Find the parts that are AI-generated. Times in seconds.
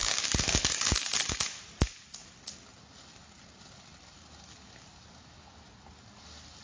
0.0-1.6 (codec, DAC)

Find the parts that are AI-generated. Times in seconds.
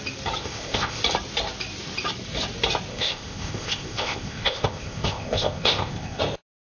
0.4-1.0 (codec, ZipCodec); 2.9-6.2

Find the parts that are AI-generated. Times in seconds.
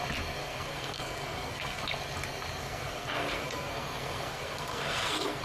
0.4-1.8 (codec, SNAC); 2.6-5.4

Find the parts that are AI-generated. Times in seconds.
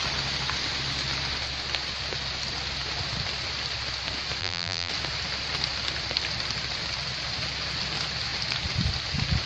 4.4-4.9 (vocoder, BigVGAN v2)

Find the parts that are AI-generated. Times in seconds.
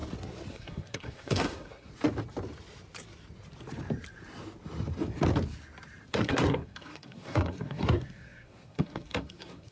0.5-1.9 (codec, SNAC); 6.1-9.7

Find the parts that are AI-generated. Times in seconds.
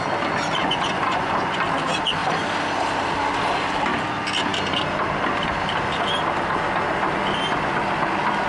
0.6-1.6 (vocoder, Vocos)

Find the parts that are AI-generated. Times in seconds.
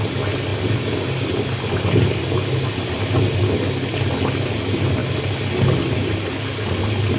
none